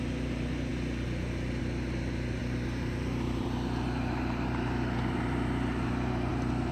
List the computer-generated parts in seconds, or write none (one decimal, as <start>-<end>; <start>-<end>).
0.0-0.7; 1.6-6.7